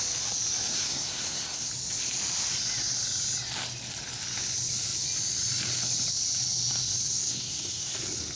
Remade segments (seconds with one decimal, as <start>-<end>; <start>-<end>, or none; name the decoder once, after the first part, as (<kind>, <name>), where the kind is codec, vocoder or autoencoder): 0.7-1.7 (codec, SNAC); 7.1-7.9